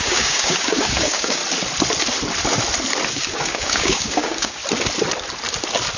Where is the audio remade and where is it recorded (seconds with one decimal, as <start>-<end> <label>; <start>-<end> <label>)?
0.0-1.4 remade; 1.4-3.1 recorded; 3.1-4.6 remade; 4.6-6.0 recorded